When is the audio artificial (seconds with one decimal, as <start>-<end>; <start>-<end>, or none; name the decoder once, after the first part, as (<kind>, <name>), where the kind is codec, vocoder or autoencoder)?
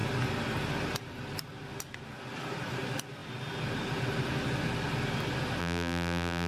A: 5.6-6.5 (vocoder, BigVGAN v2)